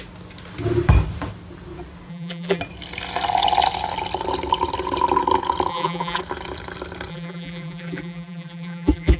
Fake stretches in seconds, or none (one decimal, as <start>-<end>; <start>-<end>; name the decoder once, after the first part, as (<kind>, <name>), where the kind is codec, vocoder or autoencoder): 2.1-2.6 (vocoder, BigVGAN v2); 5.7-6.2; 7.1-9.2

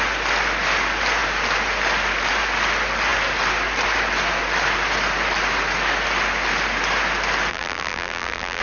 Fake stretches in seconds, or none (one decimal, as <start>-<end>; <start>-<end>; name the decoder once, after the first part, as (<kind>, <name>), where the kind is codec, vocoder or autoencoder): 7.5-8.6 (vocoder, BigVGAN v2)

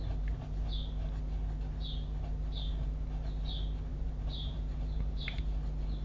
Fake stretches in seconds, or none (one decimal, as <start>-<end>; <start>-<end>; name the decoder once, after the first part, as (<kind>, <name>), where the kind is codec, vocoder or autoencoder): 3.9-5.4 (vocoder, BigVGAN v2)

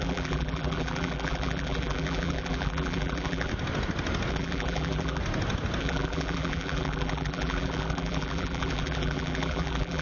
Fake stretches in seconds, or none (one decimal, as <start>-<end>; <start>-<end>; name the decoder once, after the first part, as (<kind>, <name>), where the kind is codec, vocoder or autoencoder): 0.0-3.5 (vocoder, BigVGAN v2); 4.3-5.2; 5.8-10.0

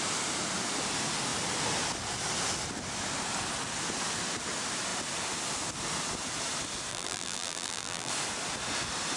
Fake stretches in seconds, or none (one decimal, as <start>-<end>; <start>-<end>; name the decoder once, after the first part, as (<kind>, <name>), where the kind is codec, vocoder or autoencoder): 6.9-8.1 (vocoder, BigVGAN v2)

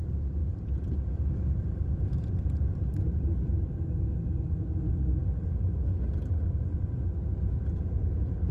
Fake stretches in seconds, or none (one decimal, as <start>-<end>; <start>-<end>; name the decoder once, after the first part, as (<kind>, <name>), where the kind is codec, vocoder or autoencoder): 0.4-3.2 (vocoder, BigVGAN v2)

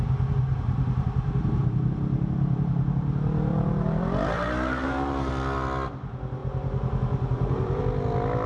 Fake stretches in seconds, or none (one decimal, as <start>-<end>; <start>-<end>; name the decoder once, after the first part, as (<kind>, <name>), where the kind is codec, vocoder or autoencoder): 0.5-3.1 (vocoder, BigVGAN v2); 3.5-5.3; 6.4-7.8

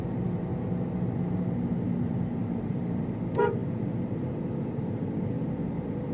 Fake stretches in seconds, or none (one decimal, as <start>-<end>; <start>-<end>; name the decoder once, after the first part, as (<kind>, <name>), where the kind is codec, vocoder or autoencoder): 0.0-0.5 (vocoder, BigVGAN v2); 2.1-6.1